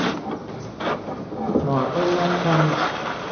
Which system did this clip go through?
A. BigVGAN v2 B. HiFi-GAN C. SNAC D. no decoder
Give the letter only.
D